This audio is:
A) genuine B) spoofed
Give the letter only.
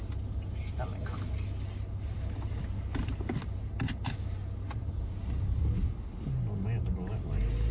A